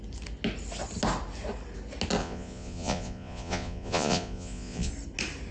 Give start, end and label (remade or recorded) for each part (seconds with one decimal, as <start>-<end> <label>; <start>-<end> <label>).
0.0-2.2 recorded; 2.2-4.9 remade; 4.9-5.5 recorded